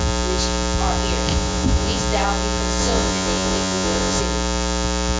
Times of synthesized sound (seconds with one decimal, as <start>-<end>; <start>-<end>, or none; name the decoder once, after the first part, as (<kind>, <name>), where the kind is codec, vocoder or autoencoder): 1.3-2.0 (vocoder, Vocos); 2.8-4.2